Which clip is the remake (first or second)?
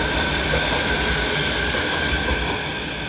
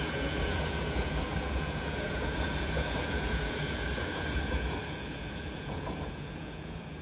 second